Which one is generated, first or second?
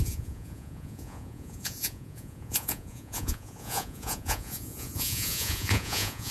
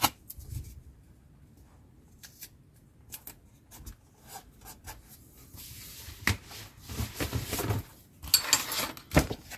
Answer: first